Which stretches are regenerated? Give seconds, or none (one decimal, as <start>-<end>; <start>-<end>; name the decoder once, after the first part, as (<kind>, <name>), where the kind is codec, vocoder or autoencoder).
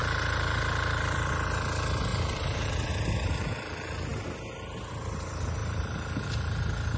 0.0-1.3 (vocoder, BigVGAN v2); 2.1-2.7